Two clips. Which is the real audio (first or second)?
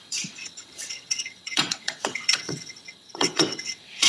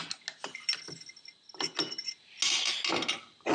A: second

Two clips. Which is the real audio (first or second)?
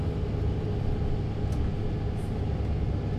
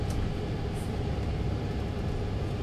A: first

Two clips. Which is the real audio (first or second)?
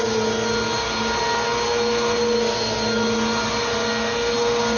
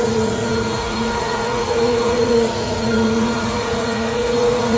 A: first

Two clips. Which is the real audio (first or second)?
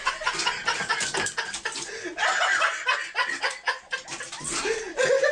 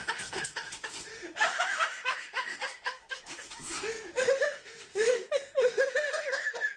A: first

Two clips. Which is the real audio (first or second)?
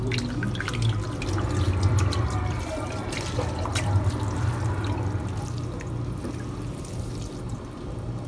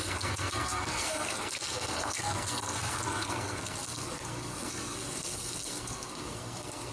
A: first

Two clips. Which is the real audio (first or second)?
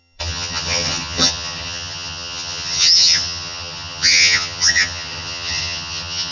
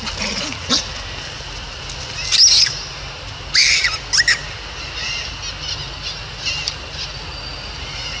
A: second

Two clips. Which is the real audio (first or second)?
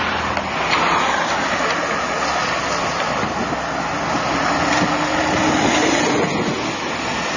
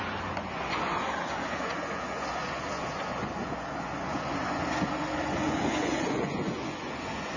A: first